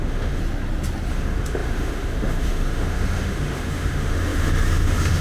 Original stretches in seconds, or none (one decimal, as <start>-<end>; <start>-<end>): 0.4-1.1